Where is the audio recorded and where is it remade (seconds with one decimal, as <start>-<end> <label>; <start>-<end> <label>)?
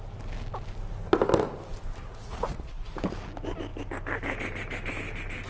0.0-2.1 recorded; 2.1-2.9 remade; 2.9-5.5 recorded